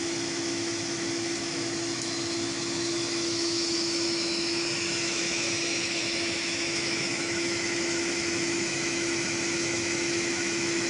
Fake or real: fake